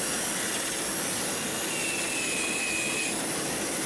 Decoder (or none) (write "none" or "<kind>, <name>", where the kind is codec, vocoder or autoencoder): none